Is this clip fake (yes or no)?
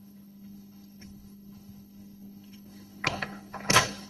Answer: yes